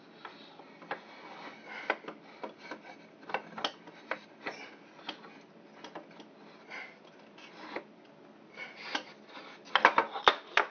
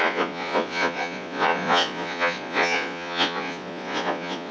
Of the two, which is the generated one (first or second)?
second